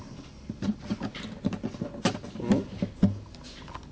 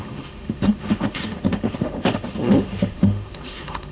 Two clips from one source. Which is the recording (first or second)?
first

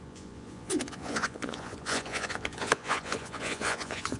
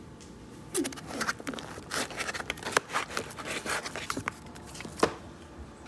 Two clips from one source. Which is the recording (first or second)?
second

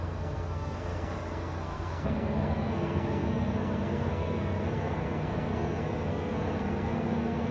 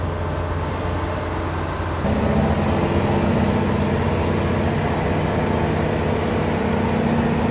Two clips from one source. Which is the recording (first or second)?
second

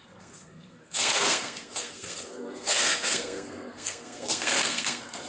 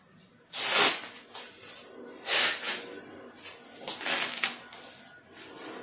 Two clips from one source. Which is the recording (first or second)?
second